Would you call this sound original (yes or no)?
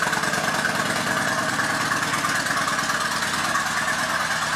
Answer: yes